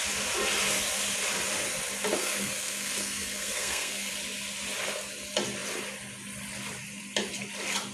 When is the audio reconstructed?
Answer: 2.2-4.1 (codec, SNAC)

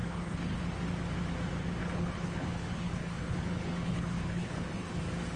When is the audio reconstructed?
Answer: 0.0-0.6 (codec, HILCodec); 1.8-5.0

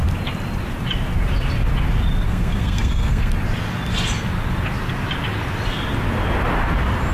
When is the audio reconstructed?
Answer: 2.3-3.3 (codec, SNAC)

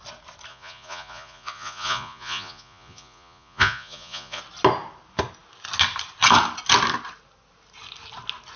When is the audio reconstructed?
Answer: 0.5-4.4 (vocoder, Vocos)

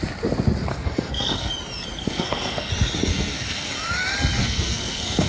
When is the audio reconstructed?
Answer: 0.7-1.5 (codec, SNAC); 2.0-2.7; 3.1-3.7; 4.4-5.3

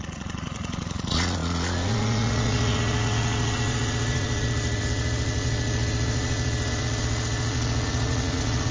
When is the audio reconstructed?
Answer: 0.0-8.7 (vocoder, Vocos)

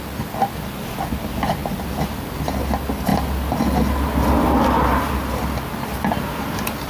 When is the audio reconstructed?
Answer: none